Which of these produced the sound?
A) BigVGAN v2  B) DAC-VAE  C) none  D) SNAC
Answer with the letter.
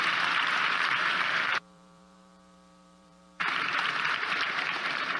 A